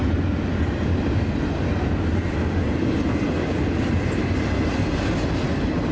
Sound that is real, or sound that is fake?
real